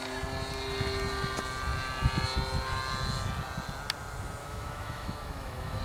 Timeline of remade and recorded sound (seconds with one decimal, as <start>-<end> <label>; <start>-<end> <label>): 0.0-4.4 recorded; 4.4-5.8 remade